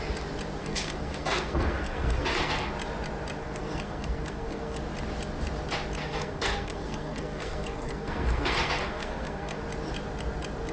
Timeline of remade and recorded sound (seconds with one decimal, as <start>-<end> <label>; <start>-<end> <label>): 0.0-0.6 recorded; 0.6-2.7 remade; 2.7-3.4 recorded; 3.4-4.8 remade; 4.8-6.0 recorded; 6.0-9.6 remade; 9.6-10.7 recorded